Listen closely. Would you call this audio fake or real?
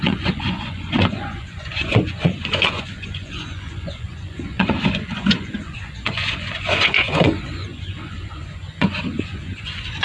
fake